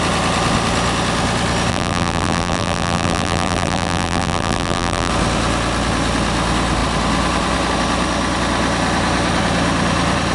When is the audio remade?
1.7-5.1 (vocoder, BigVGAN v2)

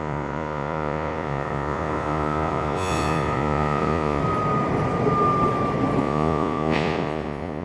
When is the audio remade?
0.0-4.2 (vocoder, Vocos); 6.0-7.6

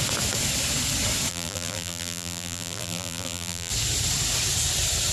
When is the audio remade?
1.3-3.7 (vocoder, BigVGAN v2)